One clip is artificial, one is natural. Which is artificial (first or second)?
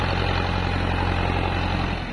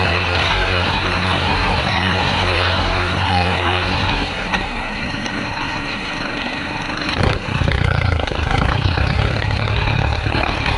second